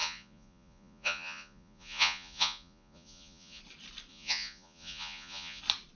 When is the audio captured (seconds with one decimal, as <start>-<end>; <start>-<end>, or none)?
3.6-4.1; 5.6-6.0